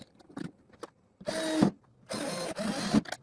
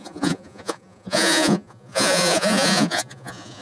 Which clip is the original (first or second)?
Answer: first